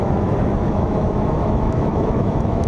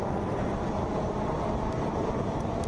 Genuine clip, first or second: second